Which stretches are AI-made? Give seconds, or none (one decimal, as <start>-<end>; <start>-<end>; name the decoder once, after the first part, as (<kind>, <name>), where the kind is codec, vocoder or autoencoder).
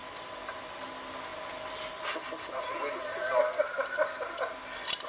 0.0-0.6 (vocoder, BigVGAN v2)